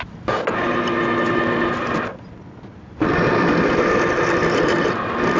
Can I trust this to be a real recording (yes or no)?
yes